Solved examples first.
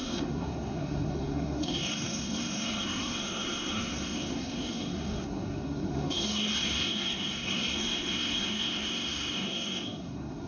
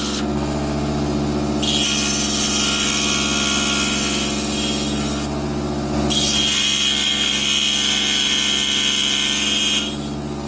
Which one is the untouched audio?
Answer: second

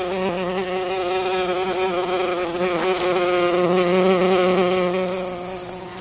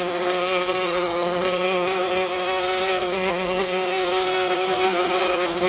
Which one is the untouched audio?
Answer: first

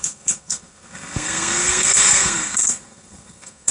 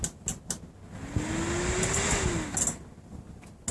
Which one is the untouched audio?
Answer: second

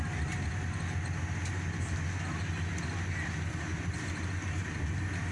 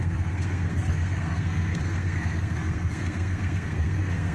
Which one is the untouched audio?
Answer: first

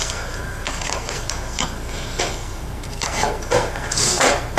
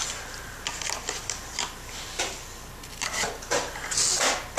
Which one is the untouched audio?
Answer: second